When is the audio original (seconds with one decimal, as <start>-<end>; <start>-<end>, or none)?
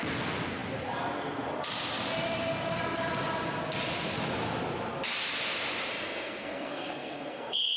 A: 0.0-5.9